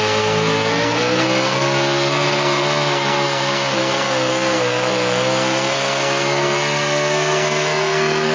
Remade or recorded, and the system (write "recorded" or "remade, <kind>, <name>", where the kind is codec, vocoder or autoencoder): remade, codec, SNAC